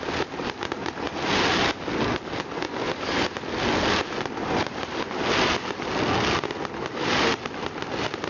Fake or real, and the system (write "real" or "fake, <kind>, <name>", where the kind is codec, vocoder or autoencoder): real